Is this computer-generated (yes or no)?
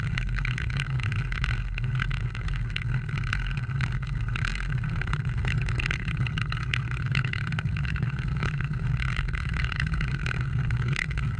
yes